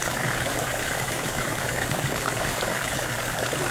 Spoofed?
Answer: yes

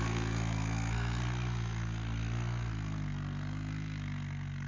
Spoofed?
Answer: yes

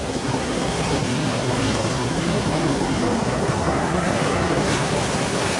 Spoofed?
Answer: yes